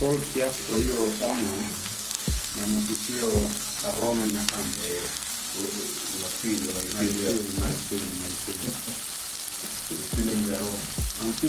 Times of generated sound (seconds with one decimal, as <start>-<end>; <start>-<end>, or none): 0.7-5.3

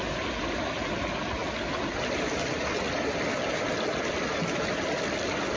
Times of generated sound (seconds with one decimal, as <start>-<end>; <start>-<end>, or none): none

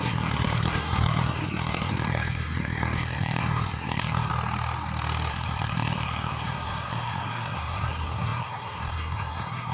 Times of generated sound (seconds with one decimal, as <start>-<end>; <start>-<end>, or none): 0.0-4.3; 5.3-9.7